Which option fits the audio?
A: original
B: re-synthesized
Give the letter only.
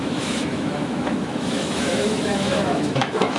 B